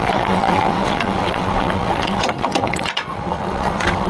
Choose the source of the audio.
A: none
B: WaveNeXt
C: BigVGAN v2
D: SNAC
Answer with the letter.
B